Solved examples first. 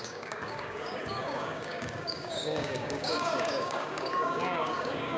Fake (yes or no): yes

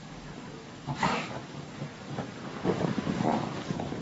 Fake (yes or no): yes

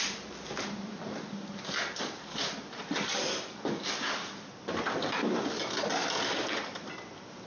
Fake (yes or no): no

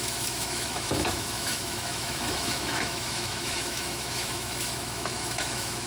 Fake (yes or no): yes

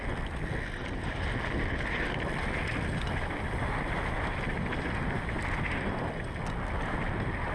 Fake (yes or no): no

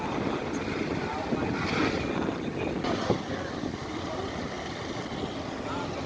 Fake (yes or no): no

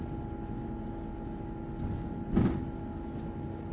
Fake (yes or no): no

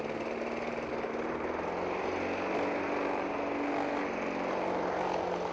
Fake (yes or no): no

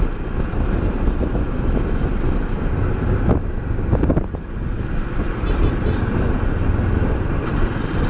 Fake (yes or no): no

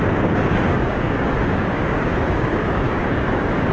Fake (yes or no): yes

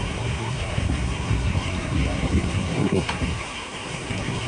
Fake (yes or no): yes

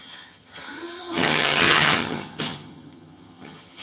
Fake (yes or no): yes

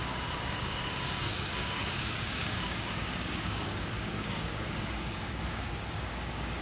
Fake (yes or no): yes